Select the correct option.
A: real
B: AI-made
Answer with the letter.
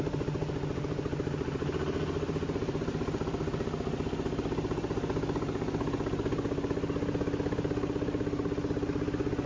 A